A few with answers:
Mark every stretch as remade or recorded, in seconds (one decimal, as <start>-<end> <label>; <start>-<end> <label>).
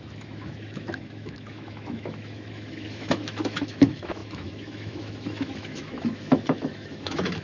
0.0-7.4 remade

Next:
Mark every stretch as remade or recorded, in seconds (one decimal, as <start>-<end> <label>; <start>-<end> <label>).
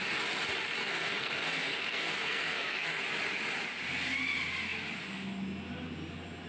0.0-0.8 recorded; 0.8-3.0 remade; 3.0-6.5 recorded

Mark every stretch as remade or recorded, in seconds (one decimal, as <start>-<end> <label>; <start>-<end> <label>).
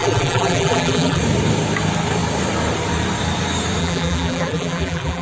0.0-1.2 remade; 1.2-3.8 recorded; 3.8-5.2 remade